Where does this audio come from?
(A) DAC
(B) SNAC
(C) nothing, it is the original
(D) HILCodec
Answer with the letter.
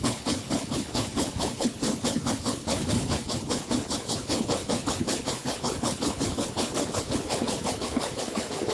D